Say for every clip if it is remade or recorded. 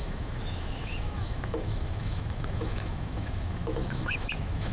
remade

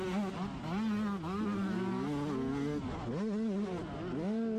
recorded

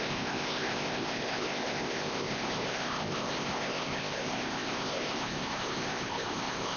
remade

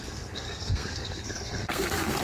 remade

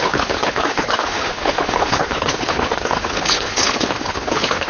remade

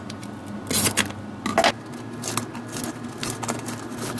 recorded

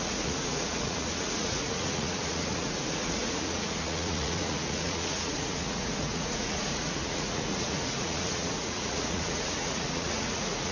remade